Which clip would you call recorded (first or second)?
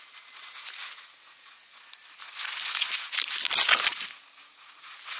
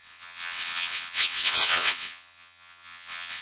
first